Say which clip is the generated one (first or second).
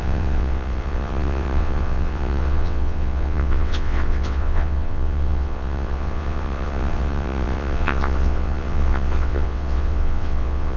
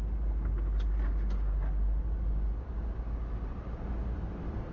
first